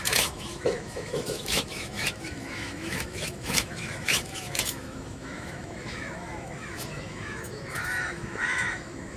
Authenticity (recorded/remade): remade